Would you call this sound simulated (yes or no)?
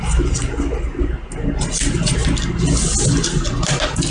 no